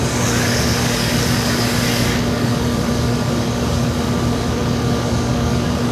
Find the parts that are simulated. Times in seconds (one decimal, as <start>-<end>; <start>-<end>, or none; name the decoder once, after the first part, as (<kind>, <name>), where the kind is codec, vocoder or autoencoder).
0.0-5.9 (codec, DAC)